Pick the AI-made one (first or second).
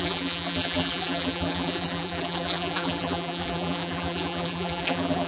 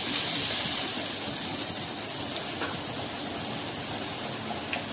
first